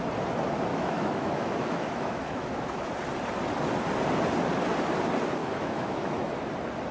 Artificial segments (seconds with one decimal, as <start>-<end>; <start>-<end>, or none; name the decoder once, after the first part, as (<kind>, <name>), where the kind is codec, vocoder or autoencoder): 0.7-2.9 (autoencoder, DAC-VAE); 5.4-6.3